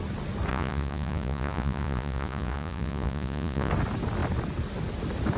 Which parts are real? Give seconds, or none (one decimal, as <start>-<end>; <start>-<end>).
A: 0.0-0.5; 3.7-5.4